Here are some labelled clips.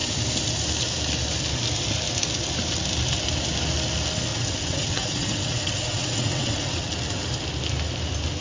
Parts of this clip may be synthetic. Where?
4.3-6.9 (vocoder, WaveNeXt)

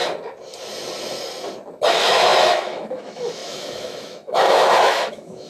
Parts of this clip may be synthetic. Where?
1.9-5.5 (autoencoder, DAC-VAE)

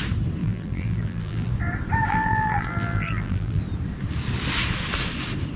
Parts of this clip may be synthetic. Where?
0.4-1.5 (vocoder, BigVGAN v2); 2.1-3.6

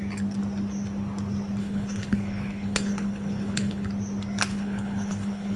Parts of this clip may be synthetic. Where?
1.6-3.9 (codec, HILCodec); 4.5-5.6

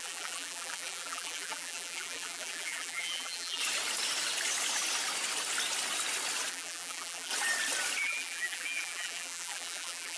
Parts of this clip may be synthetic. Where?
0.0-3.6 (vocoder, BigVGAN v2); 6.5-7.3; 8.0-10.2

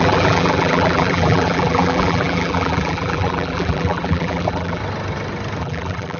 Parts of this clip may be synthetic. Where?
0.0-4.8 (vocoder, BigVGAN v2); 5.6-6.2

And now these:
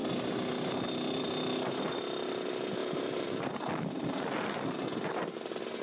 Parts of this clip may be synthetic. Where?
2.8-3.7 (vocoder, BigVGAN v2)

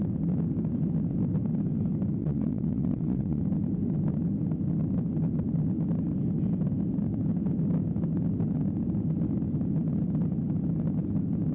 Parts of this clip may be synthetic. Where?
2.2-3.4 (vocoder, WaveNeXt)